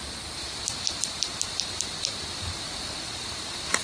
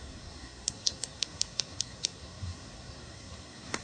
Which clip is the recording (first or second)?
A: first